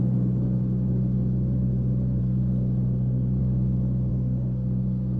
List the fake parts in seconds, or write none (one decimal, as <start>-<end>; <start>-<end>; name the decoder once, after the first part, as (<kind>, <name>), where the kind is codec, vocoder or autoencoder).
2.2-3.4 (codec, SNAC); 4.1-5.2